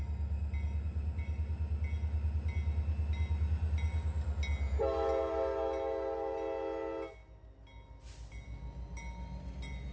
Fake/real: real